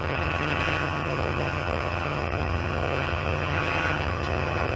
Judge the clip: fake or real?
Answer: fake